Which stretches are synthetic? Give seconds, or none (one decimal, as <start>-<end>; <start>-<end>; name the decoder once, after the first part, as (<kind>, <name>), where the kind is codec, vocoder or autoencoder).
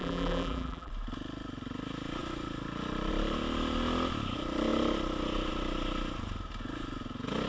0.0-0.9 (vocoder, BigVGAN v2)